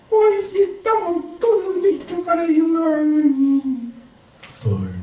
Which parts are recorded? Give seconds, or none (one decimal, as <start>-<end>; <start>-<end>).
4.2-5.0